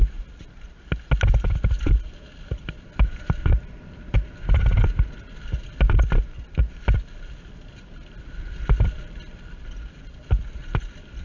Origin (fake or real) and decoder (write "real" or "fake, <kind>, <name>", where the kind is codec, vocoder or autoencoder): real